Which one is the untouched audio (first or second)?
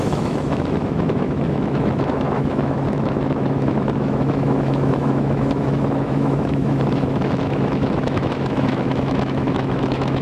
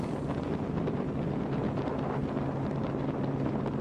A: second